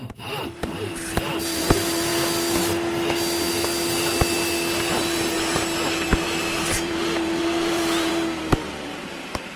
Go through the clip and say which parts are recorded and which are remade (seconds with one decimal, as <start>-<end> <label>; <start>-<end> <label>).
0.0-2.1 remade; 2.1-4.9 recorded; 4.9-9.6 remade